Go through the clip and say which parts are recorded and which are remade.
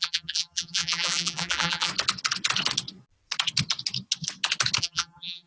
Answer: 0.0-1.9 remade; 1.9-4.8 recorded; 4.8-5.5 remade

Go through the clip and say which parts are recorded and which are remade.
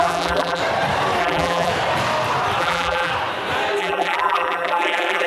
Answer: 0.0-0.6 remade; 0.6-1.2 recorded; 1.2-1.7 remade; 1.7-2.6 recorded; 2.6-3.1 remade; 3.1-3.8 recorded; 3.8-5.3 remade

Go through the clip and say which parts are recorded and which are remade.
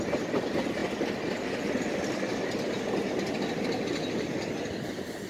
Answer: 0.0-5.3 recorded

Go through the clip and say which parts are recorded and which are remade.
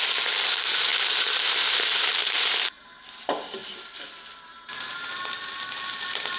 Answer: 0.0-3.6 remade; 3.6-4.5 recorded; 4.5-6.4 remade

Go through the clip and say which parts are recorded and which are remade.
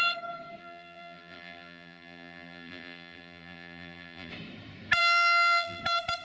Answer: 0.0-0.6 recorded; 0.6-4.3 remade; 4.3-5.0 recorded; 5.0-5.8 remade; 5.8-6.2 recorded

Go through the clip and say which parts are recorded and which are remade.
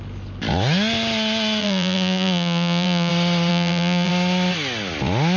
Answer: 0.0-1.6 recorded; 1.6-3.1 remade; 3.1-3.5 recorded; 3.5-4.1 remade; 4.1-5.4 recorded